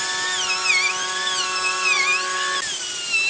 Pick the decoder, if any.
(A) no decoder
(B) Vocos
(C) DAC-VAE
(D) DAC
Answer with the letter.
A